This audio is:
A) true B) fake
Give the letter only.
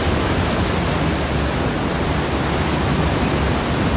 A